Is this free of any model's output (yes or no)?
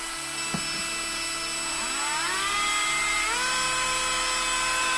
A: yes